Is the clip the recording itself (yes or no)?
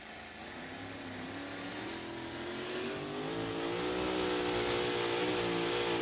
yes